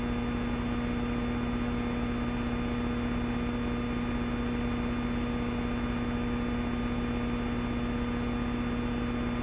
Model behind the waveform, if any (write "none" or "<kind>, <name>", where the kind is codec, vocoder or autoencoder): none